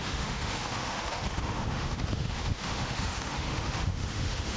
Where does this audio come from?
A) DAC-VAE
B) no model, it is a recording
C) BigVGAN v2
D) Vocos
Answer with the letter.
A